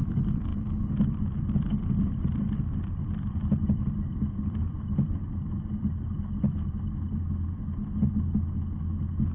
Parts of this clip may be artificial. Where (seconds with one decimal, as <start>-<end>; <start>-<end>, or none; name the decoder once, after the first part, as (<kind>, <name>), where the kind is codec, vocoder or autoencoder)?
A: none